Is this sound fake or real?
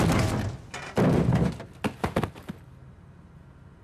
real